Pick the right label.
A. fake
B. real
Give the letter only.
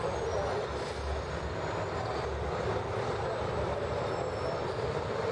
B